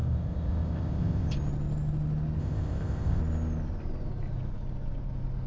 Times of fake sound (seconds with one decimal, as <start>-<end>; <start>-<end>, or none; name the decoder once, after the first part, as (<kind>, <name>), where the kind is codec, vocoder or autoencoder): 0.0-1.3 (codec, ZipCodec); 2.4-3.2